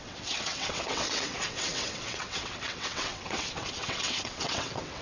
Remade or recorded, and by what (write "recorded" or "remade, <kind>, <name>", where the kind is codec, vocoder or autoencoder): remade, vocoder, WaveNeXt